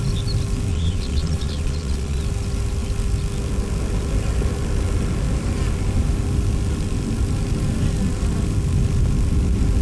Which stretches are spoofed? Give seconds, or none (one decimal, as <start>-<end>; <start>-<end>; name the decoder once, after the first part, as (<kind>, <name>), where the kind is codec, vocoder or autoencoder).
0.7-2.2 (vocoder, Vocos)